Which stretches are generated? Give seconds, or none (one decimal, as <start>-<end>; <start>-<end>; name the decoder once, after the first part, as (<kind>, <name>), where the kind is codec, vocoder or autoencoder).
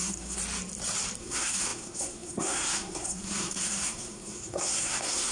0.0-0.4 (codec, SNAC); 1.2-5.3